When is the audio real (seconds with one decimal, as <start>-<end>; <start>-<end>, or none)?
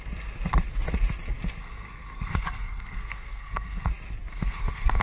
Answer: 0.0-1.6; 3.9-4.3